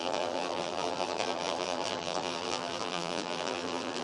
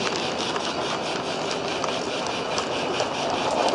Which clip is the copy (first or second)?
first